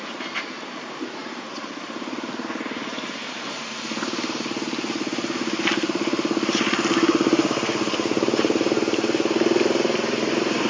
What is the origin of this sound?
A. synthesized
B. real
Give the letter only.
A